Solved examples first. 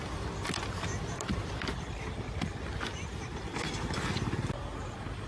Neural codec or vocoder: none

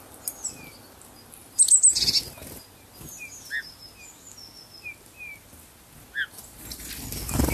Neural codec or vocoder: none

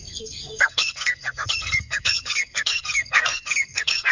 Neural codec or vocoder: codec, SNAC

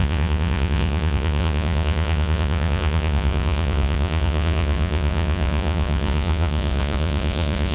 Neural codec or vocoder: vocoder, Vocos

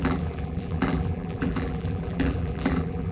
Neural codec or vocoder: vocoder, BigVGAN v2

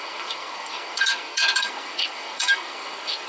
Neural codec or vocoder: codec, SNAC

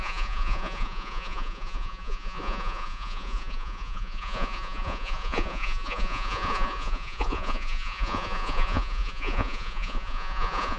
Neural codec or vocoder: vocoder, Vocos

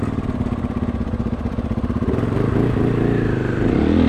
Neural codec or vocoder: none